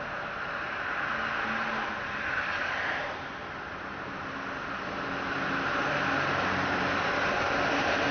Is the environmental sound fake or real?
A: real